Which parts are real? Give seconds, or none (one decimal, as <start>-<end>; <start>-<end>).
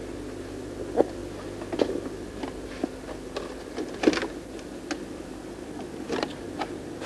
0.0-7.1